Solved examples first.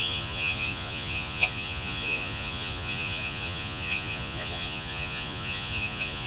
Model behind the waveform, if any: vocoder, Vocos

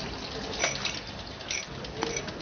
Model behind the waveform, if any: none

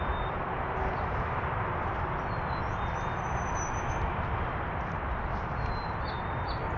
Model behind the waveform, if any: none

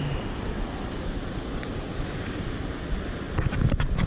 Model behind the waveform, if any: none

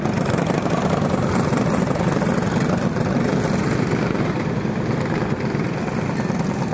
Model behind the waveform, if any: none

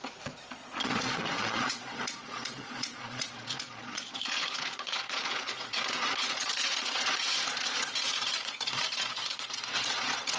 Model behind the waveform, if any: vocoder, Vocos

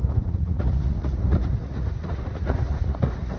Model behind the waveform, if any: vocoder, Vocos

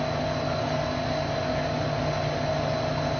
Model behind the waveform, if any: none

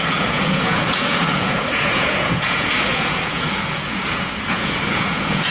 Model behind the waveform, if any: vocoder, Vocos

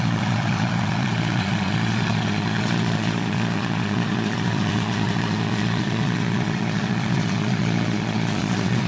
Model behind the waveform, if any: vocoder, Vocos